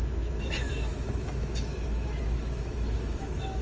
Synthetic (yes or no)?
yes